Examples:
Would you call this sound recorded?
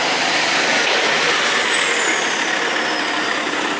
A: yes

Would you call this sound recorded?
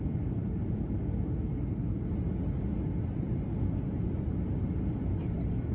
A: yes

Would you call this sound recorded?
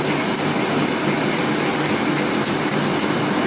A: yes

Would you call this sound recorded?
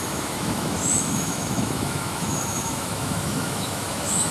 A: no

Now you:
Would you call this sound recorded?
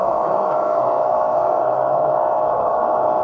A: no